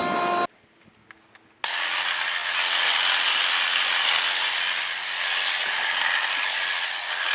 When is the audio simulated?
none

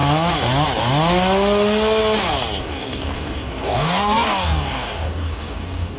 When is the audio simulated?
2.6-6.0 (codec, DAC)

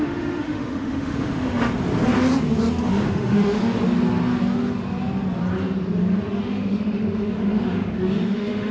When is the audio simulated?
0.0-1.7 (autoencoder, DAC-VAE); 2.8-3.6; 6.4-8.7

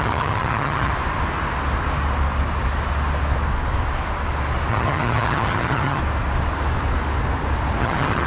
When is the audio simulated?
0.0-0.9 (vocoder, HiFi-GAN); 4.7-6.0; 7.8-8.3

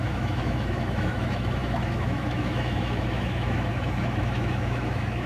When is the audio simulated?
0.0-5.3 (autoencoder, DAC-VAE)

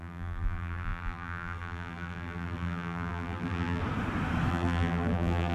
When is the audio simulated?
0.0-3.8 (vocoder, BigVGAN v2); 4.5-5.5

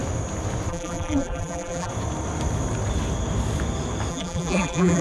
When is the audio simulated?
0.7-1.9 (vocoder, BigVGAN v2); 4.1-5.0